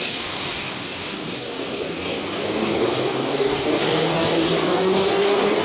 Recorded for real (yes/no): no